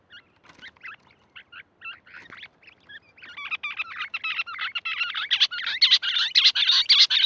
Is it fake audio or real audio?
real